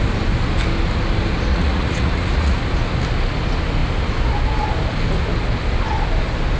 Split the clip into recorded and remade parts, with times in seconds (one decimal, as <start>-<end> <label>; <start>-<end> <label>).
0.0-1.5 recorded; 1.5-2.6 remade; 2.6-6.6 recorded